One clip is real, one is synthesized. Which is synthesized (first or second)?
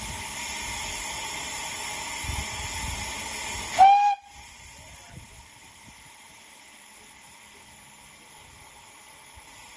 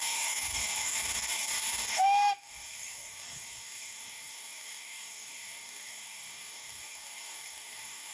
second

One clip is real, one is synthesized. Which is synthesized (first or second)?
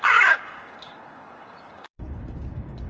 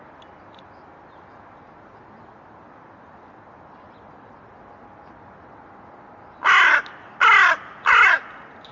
first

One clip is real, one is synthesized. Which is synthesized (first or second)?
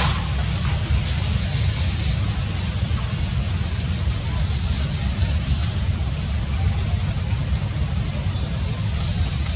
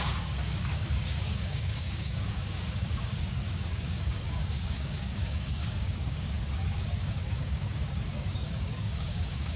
second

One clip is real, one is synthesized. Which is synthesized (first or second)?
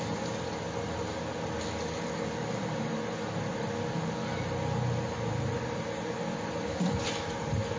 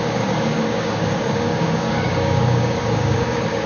second